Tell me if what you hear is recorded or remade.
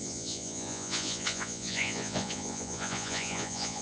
remade